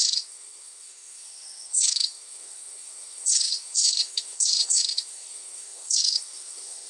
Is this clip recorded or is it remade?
remade